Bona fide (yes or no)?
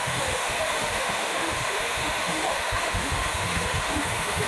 no